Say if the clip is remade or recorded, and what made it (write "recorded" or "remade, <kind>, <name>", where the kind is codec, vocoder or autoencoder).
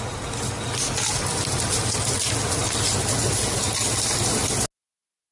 recorded